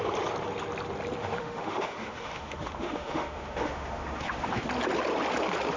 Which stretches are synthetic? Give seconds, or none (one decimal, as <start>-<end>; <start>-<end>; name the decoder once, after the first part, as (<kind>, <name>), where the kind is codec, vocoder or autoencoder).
1.2-4.7 (autoencoder, DAC-VAE)